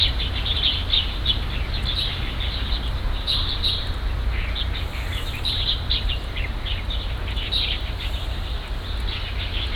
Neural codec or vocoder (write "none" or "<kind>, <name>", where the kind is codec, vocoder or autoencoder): none